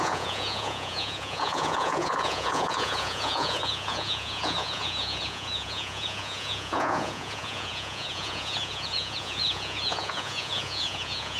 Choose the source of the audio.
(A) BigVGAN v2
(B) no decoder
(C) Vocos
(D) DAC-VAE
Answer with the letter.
C